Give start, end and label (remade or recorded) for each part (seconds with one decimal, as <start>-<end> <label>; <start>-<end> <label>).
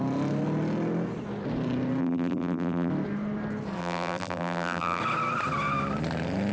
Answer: 0.0-2.0 recorded; 2.0-2.9 remade; 2.9-3.8 recorded; 3.8-5.0 remade; 5.0-6.5 recorded